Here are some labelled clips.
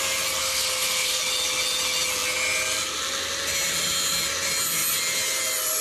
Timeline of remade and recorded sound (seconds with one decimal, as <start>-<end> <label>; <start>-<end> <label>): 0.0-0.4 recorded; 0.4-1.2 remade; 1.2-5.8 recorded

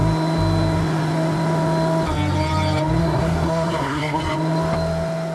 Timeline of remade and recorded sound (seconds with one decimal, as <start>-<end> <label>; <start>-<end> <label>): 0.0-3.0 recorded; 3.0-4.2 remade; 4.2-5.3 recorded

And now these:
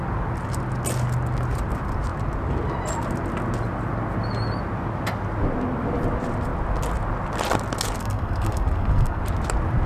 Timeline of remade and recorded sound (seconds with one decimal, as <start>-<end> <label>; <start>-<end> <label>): 0.0-8.0 recorded; 8.0-9.2 remade; 9.2-9.9 recorded

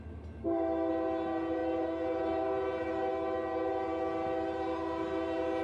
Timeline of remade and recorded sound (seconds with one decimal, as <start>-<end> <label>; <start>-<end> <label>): 0.0-0.4 recorded; 0.4-0.9 remade; 0.9-5.6 recorded

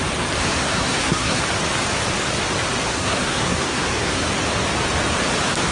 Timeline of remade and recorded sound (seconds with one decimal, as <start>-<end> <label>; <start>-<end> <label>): 0.0-0.4 recorded; 0.4-1.4 remade; 1.4-2.9 recorded; 2.9-4.3 remade; 4.3-5.7 recorded